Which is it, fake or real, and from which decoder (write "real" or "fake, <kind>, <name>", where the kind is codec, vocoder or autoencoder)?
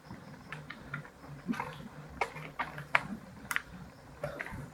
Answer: fake, vocoder, BigVGAN v2